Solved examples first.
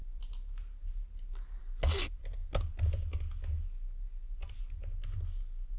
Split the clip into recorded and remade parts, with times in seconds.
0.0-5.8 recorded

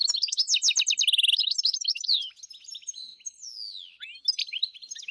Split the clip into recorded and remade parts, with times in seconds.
0.0-1.4 recorded; 1.4-2.2 remade; 2.2-2.7 recorded; 2.7-3.5 remade; 3.5-4.4 recorded; 4.4-5.1 remade